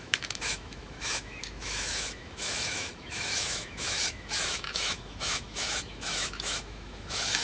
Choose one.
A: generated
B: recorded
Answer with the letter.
A